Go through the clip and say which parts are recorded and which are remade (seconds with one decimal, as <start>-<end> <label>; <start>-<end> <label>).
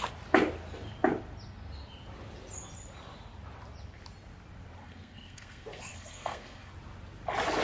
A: 0.0-4.8 recorded; 4.8-6.7 remade; 6.7-7.6 recorded